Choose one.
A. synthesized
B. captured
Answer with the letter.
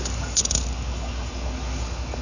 B